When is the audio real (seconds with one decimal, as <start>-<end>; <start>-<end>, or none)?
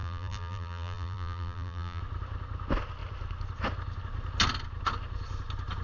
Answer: 2.0-5.8